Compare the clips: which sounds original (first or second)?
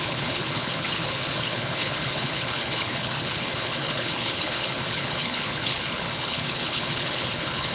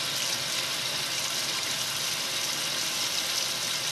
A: second